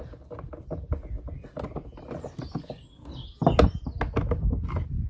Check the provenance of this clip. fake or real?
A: real